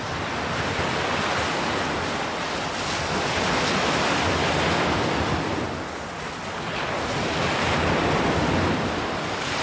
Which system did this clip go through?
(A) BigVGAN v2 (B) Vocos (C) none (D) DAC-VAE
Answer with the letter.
C